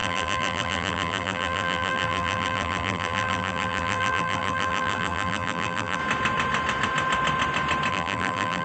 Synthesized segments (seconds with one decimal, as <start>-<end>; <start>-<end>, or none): 0.0-6.0; 7.9-8.6